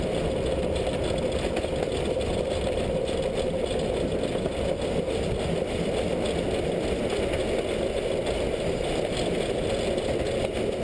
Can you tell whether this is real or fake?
real